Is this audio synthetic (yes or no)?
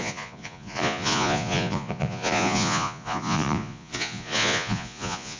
yes